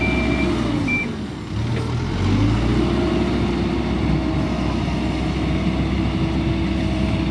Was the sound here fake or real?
real